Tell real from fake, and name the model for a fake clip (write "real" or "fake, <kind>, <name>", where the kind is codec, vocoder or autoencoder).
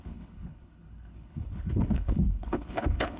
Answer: fake, codec, HILCodec